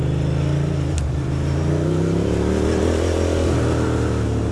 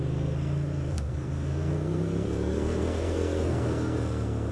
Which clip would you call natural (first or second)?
first